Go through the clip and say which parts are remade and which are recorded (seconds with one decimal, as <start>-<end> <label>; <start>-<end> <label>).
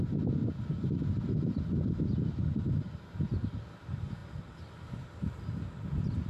0.0-6.3 recorded